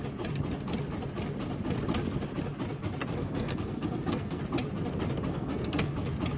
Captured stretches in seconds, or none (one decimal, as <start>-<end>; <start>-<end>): 0.0-3.2; 4.4-5.3; 5.9-6.4